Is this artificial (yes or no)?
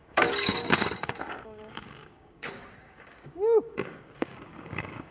yes